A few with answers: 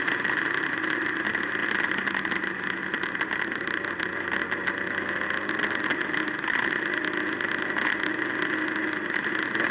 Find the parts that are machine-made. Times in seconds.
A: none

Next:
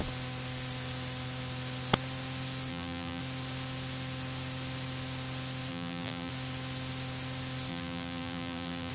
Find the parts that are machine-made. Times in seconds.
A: 2.7-3.2 (vocoder, BigVGAN v2); 5.7-6.3; 7.7-8.9

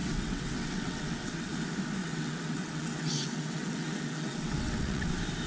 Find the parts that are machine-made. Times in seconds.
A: 0.0-1.5 (vocoder, WaveNeXt); 2.0-5.1

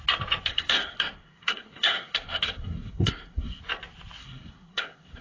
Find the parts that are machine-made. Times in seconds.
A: 0.5-3.6 (codec, SNAC); 4.2-5.2

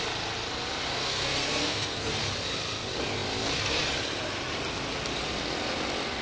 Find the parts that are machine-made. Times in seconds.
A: 0.9-2.1 (codec, SNAC)

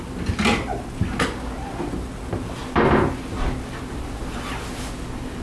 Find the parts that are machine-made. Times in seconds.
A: none

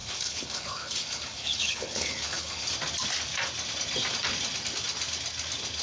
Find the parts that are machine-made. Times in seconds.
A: 0.0-2.7 (codec, HILCodec)